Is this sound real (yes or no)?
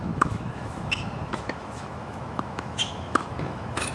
no